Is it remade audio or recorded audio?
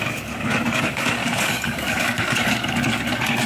remade